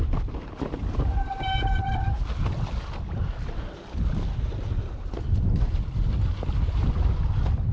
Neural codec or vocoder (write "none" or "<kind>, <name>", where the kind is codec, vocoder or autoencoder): none